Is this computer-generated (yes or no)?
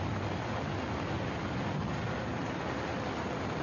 no